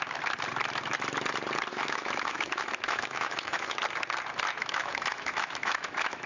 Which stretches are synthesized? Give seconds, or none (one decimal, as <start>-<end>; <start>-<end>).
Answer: 1.7-3.8; 4.6-6.3